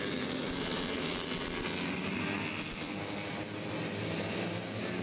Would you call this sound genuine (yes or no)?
yes